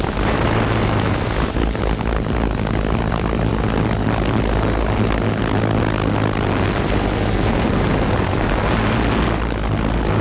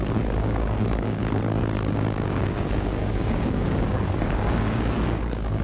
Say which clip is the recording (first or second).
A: first